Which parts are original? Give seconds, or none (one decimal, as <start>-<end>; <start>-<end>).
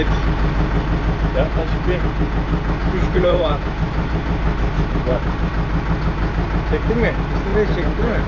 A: 0.0-2.8; 5.5-8.3